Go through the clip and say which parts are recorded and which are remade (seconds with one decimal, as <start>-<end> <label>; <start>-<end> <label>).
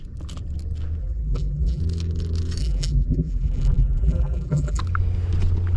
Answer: 0.0-1.0 recorded; 1.0-1.8 remade; 1.8-2.6 recorded; 2.6-4.8 remade; 4.8-5.8 recorded